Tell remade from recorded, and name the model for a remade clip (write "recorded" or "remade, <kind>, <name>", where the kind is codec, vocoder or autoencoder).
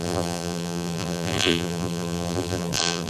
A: remade, vocoder, BigVGAN v2